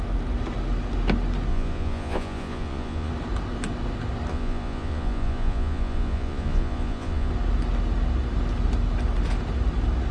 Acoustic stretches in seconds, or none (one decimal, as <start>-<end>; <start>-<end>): 0.0-1.5; 3.1-4.3; 7.3-10.1